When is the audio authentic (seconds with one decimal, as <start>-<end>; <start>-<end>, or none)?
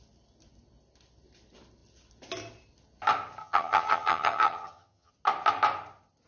0.0-3.4; 5.1-6.3